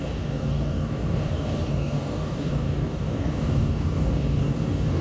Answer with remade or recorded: remade